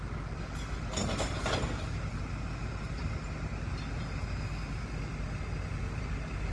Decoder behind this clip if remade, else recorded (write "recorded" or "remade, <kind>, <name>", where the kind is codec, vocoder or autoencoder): recorded